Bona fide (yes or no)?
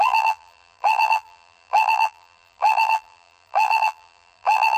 no